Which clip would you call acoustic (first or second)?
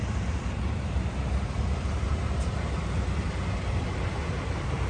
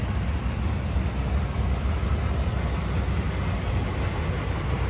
second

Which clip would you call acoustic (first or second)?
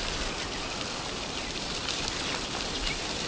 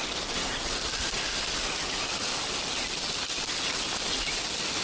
second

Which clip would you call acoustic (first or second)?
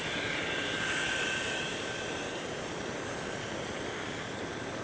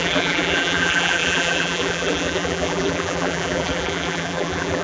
first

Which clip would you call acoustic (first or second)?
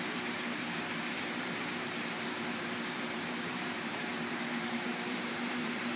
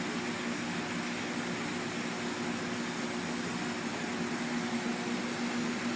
second